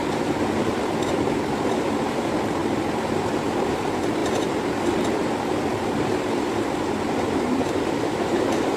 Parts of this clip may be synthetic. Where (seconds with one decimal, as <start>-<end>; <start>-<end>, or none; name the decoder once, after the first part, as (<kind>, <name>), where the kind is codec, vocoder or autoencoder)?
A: 0.0-8.8 (vocoder, BigVGAN v2)